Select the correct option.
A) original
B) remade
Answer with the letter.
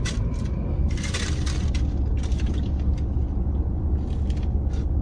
A